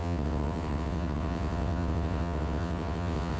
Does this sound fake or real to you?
fake